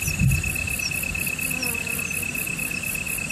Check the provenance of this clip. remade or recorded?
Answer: recorded